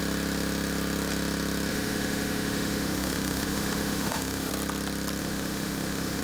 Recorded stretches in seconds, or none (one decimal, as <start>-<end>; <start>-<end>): 0.0-1.7; 4.5-5.2